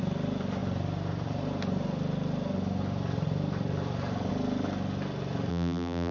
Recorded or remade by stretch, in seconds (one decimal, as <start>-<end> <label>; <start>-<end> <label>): 0.0-5.5 recorded; 5.5-6.1 remade